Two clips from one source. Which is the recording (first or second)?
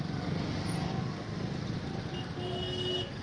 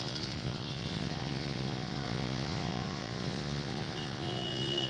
first